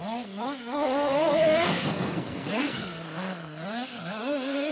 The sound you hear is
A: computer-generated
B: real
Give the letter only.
A